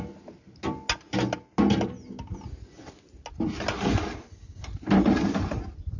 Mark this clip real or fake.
real